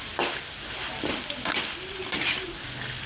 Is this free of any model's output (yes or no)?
yes